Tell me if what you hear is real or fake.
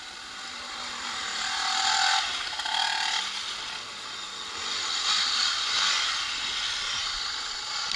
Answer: real